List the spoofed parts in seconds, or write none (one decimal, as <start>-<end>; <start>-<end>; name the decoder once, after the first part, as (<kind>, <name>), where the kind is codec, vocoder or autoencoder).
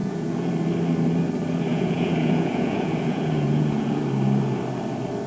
0.0-0.5 (vocoder, Vocos); 1.7-4.0